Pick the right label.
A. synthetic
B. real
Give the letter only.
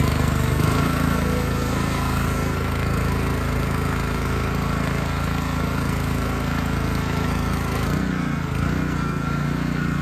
A